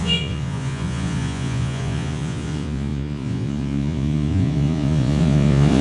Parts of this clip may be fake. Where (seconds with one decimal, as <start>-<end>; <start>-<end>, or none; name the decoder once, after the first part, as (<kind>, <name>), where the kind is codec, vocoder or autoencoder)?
0.0-5.8 (vocoder, Vocos)